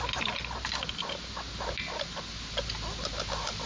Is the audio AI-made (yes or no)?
no